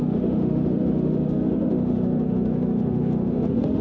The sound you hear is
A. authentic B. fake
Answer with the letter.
B